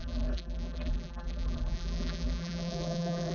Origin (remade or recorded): remade